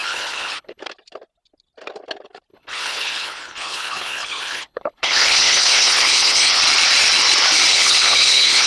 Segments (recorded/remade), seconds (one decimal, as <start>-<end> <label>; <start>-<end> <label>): 0.0-0.8 remade; 0.8-2.5 recorded; 2.5-6.6 remade; 6.6-7.7 recorded; 7.7-8.7 remade